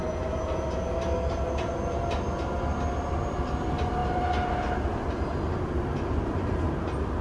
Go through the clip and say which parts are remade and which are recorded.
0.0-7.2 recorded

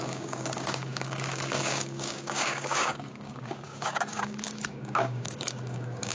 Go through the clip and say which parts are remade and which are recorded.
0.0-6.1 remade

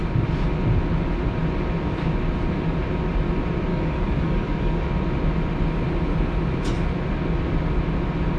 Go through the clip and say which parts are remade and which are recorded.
0.0-3.7 recorded; 3.7-4.9 remade; 4.9-8.4 recorded

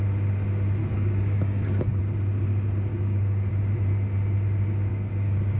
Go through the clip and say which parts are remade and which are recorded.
0.0-0.8 recorded; 0.8-2.0 remade; 2.0-2.9 recorded; 2.9-3.5 remade; 3.5-4.9 recorded; 4.9-5.6 remade

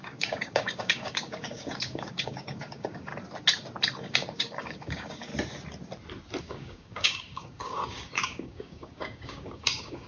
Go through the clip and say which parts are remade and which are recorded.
0.0-3.1 remade; 3.1-4.0 recorded; 4.0-5.3 remade; 5.3-6.4 recorded; 6.4-10.1 remade

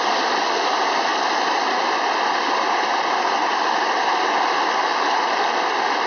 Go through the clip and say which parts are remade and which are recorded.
0.0-6.1 recorded